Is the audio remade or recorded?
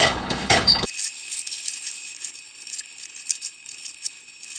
remade